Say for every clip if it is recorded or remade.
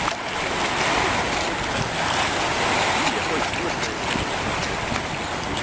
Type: recorded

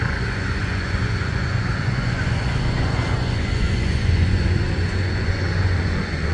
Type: remade